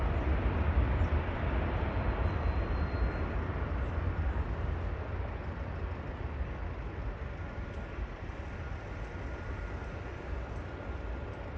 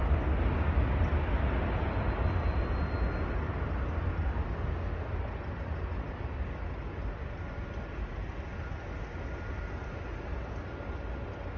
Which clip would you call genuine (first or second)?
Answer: second